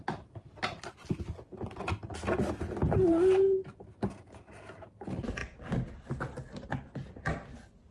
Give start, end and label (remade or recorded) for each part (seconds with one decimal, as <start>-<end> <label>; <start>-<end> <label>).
0.0-3.0 recorded; 3.0-3.8 remade; 3.8-7.9 recorded